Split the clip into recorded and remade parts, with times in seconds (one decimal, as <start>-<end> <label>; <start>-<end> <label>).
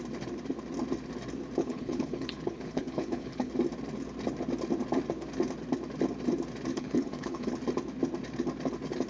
0.0-1.6 recorded; 1.6-3.5 remade; 3.5-6.7 recorded; 6.7-7.5 remade; 7.5-9.1 recorded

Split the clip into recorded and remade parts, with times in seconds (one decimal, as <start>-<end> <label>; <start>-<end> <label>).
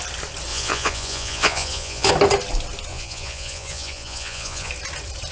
0.0-0.5 recorded; 0.5-2.1 remade; 2.1-2.9 recorded; 2.9-4.7 remade; 4.7-5.3 recorded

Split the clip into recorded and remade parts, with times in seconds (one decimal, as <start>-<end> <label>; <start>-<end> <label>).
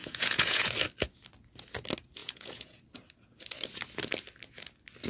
0.0-0.7 remade; 0.7-2.2 recorded; 2.2-2.8 remade; 2.8-5.1 recorded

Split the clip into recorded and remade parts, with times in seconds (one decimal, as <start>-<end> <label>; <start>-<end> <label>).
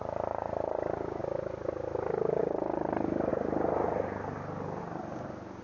0.0-5.6 recorded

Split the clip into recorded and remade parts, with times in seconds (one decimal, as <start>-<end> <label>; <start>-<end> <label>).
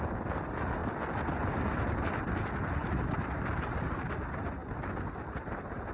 0.0-5.9 recorded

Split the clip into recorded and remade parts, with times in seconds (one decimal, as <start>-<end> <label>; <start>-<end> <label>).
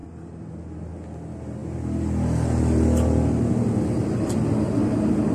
0.0-5.3 recorded